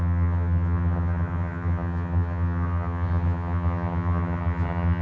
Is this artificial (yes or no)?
yes